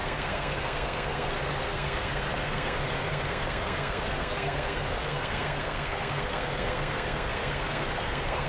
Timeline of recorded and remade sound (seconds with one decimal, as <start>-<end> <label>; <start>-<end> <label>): 0.0-8.5 remade